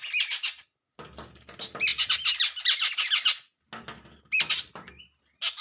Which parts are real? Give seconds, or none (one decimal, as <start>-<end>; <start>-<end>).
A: 0.0-5.6